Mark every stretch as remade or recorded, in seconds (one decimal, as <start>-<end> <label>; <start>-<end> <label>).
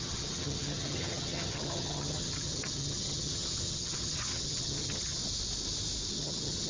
0.0-5.2 remade; 5.2-6.1 recorded; 6.1-6.7 remade